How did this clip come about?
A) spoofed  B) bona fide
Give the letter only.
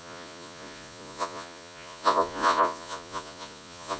A